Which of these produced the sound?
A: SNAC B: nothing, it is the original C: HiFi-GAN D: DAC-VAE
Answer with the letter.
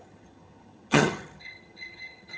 C